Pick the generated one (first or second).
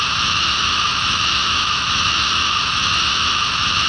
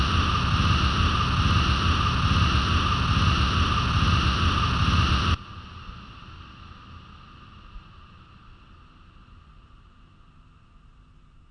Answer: first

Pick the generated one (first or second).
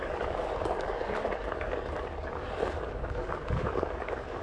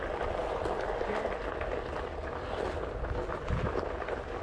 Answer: first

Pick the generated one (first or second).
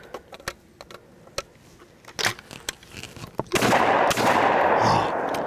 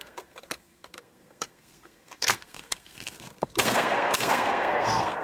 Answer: second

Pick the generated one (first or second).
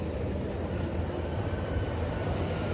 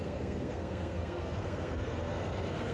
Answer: second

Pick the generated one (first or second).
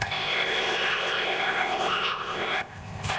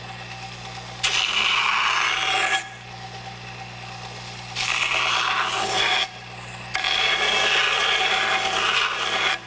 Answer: first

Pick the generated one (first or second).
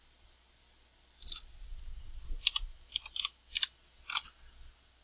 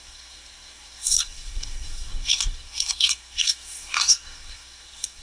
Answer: second